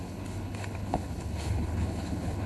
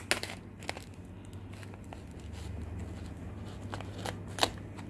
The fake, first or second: first